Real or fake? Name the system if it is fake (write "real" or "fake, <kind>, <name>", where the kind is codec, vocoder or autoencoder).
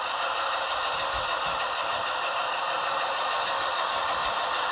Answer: fake, vocoder, BigVGAN v2